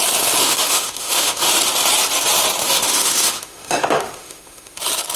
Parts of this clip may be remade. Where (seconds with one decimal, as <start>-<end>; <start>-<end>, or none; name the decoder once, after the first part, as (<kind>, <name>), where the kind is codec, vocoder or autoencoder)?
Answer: 0.4-1.5 (autoencoder, DAC-VAE); 2.6-4.8